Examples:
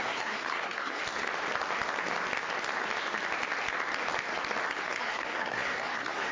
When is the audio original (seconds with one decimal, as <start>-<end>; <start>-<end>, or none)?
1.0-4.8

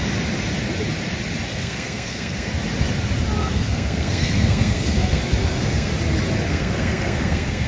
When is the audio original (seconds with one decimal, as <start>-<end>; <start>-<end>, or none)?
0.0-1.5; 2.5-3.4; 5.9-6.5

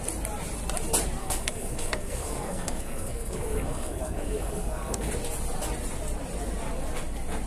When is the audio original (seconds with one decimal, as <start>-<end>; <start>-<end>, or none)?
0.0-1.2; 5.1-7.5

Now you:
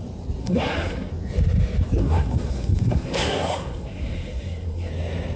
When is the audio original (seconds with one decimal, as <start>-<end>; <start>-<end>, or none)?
0.0-0.4; 1.1-2.0; 4.9-5.4